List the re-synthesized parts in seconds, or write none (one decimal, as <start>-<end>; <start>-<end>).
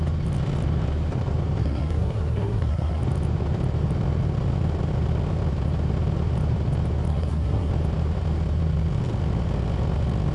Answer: 1.6-3.0; 7.1-7.7